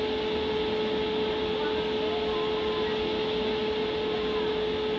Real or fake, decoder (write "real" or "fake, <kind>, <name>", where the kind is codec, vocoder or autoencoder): real